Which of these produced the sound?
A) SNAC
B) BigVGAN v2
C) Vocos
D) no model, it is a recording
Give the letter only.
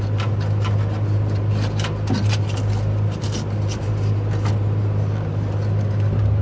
D